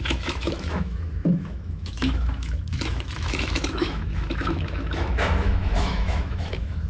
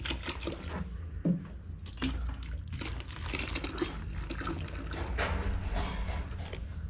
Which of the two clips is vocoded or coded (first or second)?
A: first